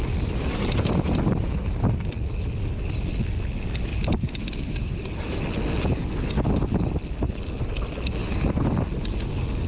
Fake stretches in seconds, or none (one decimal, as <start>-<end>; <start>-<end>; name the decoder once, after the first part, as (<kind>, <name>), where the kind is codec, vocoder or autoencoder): 0.5-1.9 (vocoder, BigVGAN v2); 3.9-5.3; 8.2-8.8